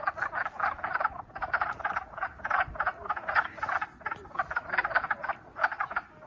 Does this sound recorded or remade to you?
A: recorded